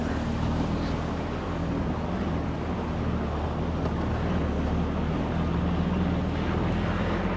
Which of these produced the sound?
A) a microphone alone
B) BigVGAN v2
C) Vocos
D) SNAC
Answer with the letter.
A